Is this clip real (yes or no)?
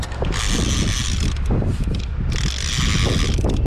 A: yes